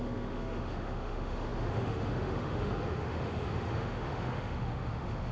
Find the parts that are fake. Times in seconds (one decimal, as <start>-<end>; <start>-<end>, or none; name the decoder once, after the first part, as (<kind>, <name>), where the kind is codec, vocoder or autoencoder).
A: 0.0-5.3 (autoencoder, DAC-VAE)